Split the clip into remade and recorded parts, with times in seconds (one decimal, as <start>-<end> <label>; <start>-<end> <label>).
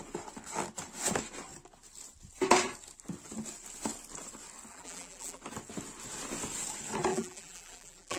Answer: 0.0-4.7 recorded; 4.7-5.4 remade; 5.4-7.1 recorded; 7.1-8.2 remade